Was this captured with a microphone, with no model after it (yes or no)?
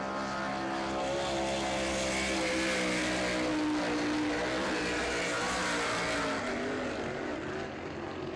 yes